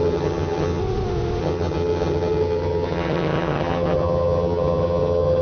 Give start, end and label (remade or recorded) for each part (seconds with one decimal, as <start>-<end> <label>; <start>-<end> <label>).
0.0-0.8 remade; 0.8-1.4 recorded; 1.4-5.4 remade